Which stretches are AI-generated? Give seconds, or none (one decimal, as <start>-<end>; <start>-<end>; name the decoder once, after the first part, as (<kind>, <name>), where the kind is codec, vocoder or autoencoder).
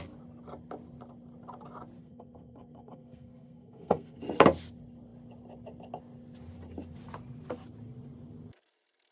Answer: 2.0-4.2 (codec, SNAC)